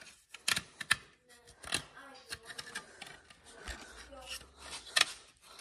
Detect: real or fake real